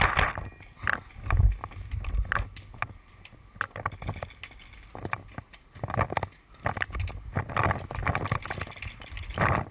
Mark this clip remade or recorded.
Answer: recorded